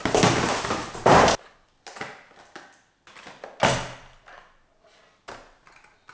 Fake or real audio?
real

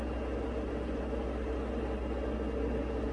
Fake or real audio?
real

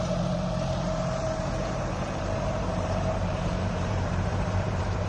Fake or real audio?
fake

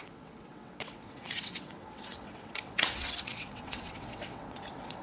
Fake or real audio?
fake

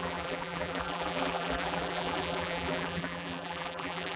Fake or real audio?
fake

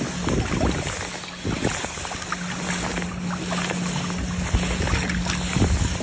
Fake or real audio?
real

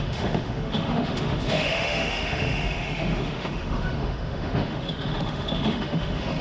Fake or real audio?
fake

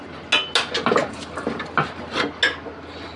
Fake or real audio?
real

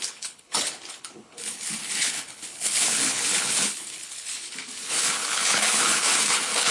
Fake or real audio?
fake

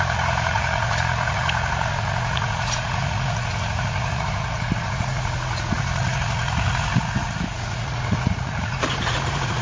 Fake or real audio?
fake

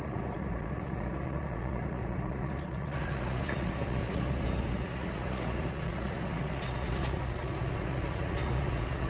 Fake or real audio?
fake